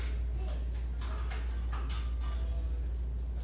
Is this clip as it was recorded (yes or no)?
yes